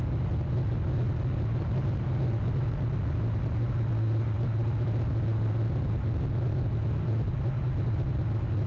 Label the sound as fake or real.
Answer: real